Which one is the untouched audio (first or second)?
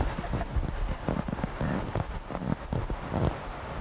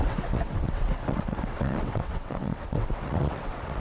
first